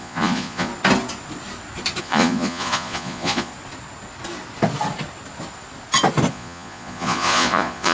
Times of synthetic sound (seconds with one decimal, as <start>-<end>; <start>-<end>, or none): 0.0-0.7; 2.0-3.5; 6.3-7.9